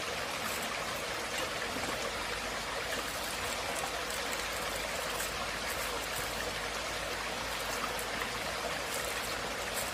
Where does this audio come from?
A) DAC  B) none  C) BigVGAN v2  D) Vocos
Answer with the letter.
B